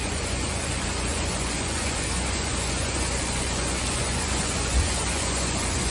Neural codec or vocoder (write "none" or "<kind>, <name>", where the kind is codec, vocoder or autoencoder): vocoder, Vocos